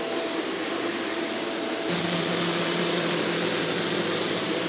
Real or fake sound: real